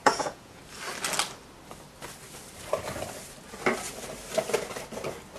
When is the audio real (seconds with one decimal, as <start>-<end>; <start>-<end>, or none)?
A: 0.6-5.4